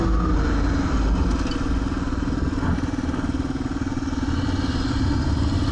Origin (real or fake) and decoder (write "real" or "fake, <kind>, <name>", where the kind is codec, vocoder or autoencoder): real